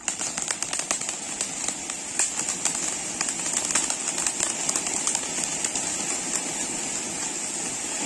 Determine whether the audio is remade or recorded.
recorded